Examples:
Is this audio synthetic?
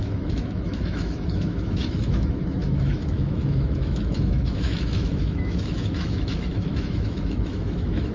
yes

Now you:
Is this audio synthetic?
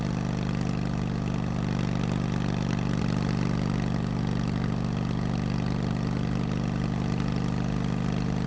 no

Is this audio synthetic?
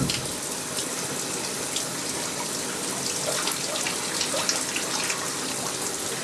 no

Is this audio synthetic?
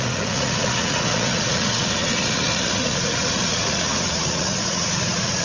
yes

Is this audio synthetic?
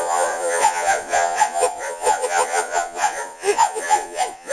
yes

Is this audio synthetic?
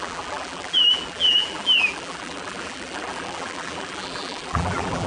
yes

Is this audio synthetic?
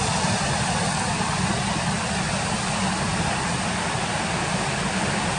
no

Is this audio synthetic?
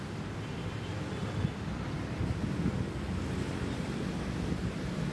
no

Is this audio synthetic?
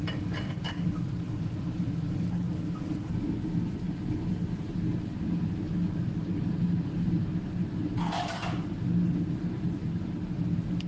no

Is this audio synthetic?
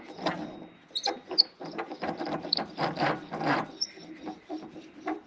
no